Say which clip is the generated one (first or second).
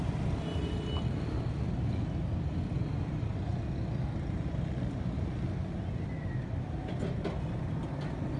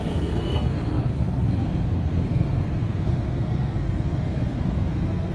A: second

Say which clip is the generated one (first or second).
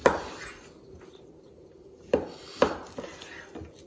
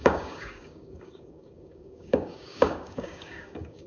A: second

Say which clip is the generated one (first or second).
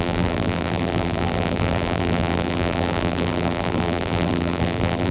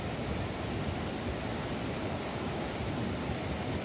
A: first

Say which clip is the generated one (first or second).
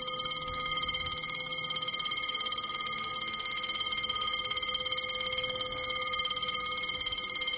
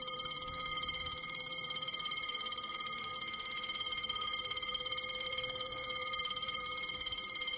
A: second